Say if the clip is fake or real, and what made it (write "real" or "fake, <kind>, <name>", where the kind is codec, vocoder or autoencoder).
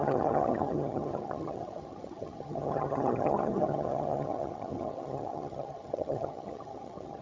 fake, vocoder, HiFi-GAN